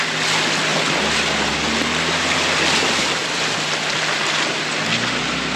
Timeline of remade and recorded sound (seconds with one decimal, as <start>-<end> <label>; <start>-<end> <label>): 0.0-5.6 recorded